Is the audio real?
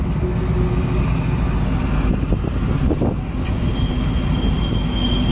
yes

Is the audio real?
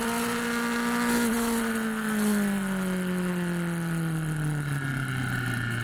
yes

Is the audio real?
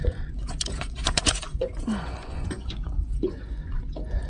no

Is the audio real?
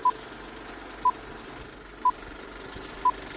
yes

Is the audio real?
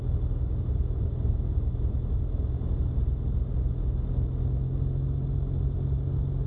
yes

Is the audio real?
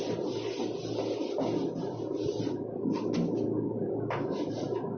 yes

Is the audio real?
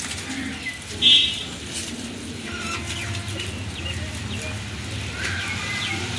yes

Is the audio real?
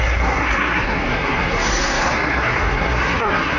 no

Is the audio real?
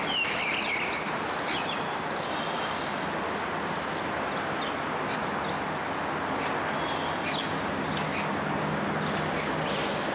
yes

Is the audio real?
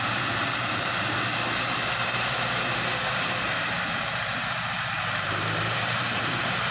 no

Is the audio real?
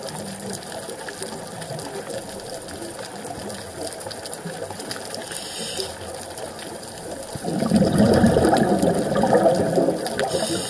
yes